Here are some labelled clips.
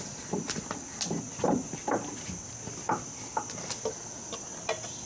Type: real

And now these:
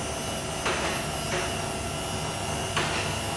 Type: real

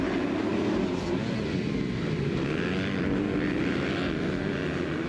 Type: real